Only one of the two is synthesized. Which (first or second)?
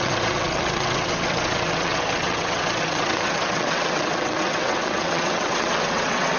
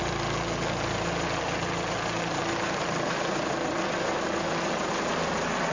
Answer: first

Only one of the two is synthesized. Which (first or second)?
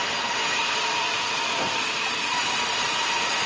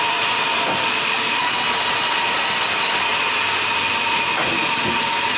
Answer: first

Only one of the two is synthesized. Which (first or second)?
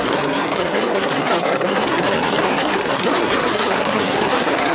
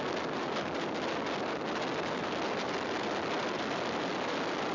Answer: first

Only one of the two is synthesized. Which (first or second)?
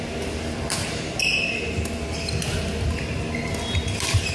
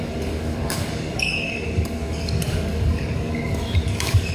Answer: second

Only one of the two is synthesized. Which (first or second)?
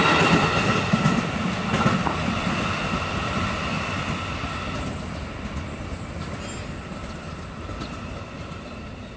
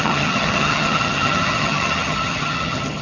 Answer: second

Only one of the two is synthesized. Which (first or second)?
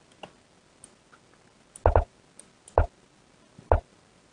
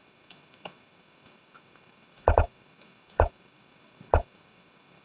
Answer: second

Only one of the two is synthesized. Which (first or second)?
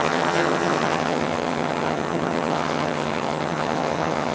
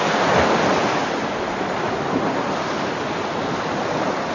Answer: first